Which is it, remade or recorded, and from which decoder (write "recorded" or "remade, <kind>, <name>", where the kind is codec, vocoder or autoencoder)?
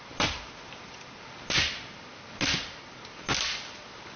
recorded